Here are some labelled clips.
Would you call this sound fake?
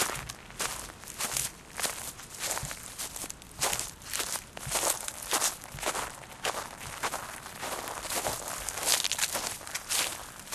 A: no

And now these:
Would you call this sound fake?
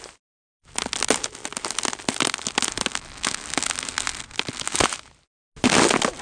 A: no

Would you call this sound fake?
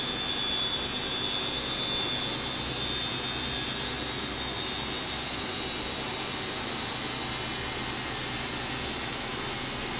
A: no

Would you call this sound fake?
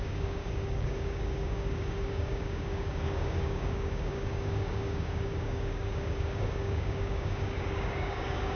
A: yes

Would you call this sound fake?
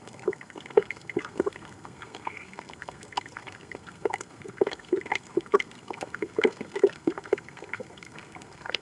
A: yes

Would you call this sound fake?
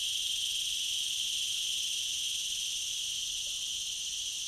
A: yes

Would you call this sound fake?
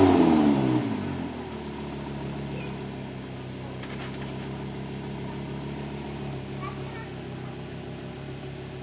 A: no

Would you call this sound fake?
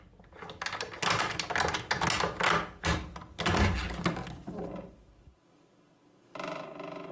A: no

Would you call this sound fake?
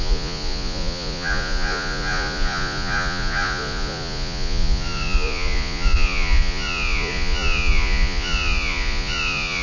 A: yes